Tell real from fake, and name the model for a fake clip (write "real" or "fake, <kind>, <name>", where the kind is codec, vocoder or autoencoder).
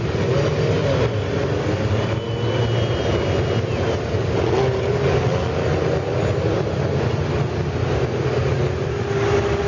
real